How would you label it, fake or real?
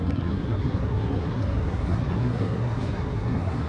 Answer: fake